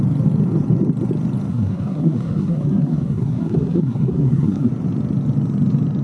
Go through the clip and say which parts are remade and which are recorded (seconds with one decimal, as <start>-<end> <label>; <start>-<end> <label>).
0.0-1.5 recorded; 1.5-4.7 remade; 4.7-6.0 recorded